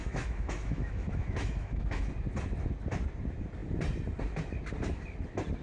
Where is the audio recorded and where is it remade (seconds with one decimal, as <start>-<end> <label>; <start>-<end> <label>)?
0.0-2.1 remade; 2.1-5.6 recorded